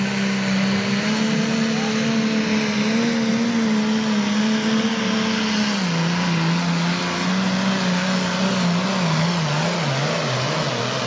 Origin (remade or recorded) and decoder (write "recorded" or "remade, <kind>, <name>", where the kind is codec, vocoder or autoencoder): recorded